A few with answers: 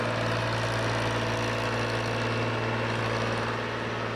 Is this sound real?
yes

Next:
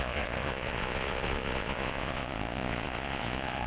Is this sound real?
no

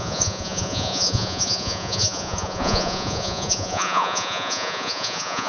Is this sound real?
no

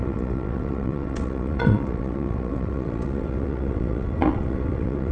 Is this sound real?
no